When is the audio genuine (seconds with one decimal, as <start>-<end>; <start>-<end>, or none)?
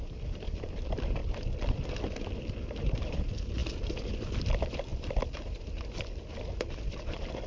1.2-2.8; 3.6-4.5; 4.9-7.0